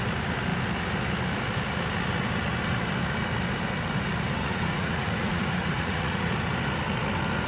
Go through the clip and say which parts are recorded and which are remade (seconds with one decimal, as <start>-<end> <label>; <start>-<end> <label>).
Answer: 0.0-4.4 recorded; 4.4-6.3 remade; 6.3-7.5 recorded

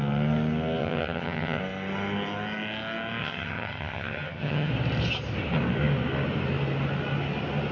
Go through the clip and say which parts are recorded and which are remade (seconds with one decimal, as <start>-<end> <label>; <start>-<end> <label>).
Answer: 0.0-0.8 recorded; 0.8-1.6 remade; 1.6-3.2 recorded; 3.2-4.7 remade; 4.7-7.7 recorded